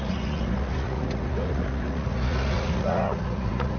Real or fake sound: fake